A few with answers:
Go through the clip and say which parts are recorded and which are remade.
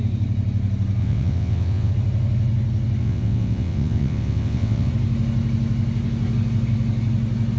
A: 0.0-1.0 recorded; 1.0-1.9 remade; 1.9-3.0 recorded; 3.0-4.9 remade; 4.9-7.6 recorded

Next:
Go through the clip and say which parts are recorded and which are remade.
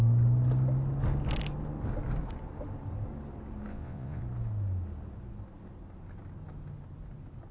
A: 0.0-3.7 recorded; 3.7-4.2 remade; 4.2-7.5 recorded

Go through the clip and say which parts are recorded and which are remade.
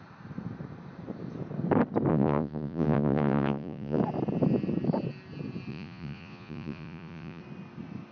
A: 0.0-2.1 recorded; 2.1-4.0 remade; 4.0-5.7 recorded; 5.7-7.4 remade; 7.4-8.1 recorded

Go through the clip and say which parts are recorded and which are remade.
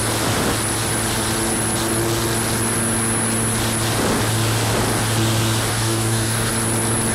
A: 0.0-5.7 recorded; 5.7-6.5 remade; 6.5-7.1 recorded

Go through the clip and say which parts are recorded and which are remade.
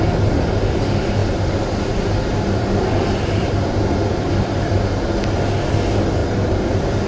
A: 0.0-1.2 recorded; 1.2-5.1 remade; 5.1-6.2 recorded; 6.2-7.1 remade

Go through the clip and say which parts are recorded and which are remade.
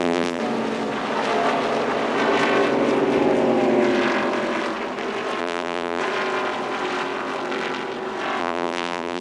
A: 0.0-0.4 remade; 0.4-5.4 recorded; 5.4-6.0 remade; 6.0-8.4 recorded; 8.4-9.2 remade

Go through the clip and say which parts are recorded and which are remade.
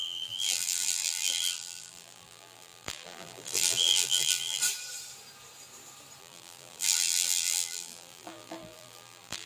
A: 0.0-4.6 remade; 4.6-6.2 recorded; 6.2-9.5 remade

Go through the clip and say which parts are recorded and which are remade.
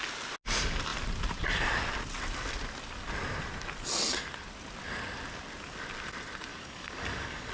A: 0.0-6.5 recorded; 6.5-7.5 remade